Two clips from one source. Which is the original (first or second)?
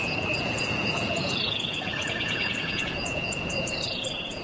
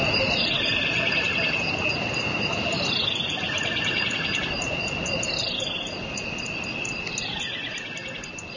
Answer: second